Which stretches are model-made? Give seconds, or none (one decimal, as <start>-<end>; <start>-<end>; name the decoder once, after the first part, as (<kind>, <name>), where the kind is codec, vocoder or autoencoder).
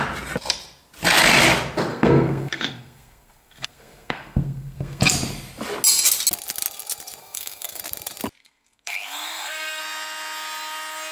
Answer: 1.9-5.0 (codec, SNAC); 7.2-7.8; 8.4-9.8